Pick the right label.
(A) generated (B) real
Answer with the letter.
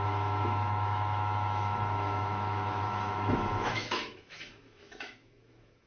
A